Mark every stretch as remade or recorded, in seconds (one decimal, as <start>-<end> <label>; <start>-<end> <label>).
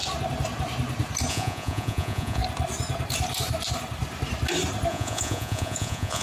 0.0-1.3 recorded; 1.3-2.4 remade; 2.4-4.9 recorded; 4.9-6.2 remade